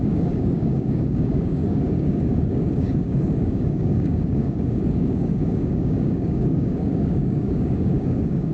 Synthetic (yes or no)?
yes